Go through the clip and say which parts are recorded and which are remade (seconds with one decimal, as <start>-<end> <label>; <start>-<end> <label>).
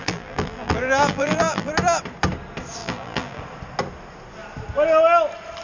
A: 0.0-1.7 remade; 1.7-2.8 recorded; 2.8-3.4 remade; 3.4-5.6 recorded